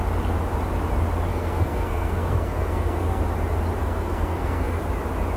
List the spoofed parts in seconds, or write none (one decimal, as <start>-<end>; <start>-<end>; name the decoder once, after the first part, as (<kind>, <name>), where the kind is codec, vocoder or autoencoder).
1.3-3.2 (codec, SNAC); 3.8-4.8